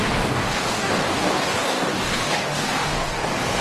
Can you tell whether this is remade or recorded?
remade